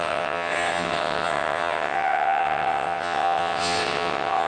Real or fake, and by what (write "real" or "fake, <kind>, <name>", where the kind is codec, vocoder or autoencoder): fake, vocoder, WaveNeXt